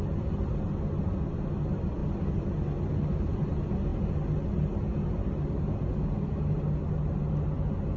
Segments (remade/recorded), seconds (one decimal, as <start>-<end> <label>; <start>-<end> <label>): 0.0-8.0 recorded

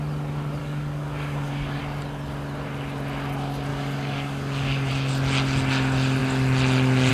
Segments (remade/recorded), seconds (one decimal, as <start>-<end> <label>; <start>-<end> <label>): 0.0-0.6 recorded; 0.6-1.8 remade; 1.8-3.7 recorded; 3.7-4.9 remade; 4.9-7.1 recorded